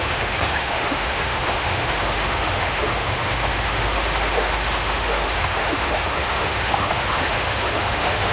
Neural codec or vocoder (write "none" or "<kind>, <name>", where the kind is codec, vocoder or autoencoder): autoencoder, DAC-VAE